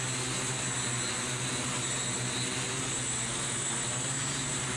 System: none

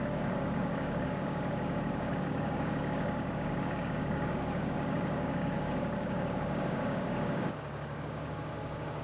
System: codec, DAC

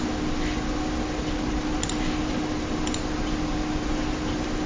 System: none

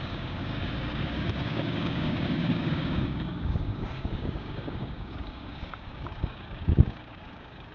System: codec, DAC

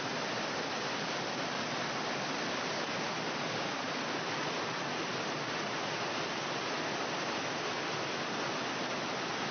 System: none